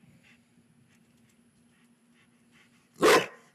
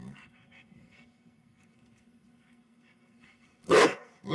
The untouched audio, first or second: first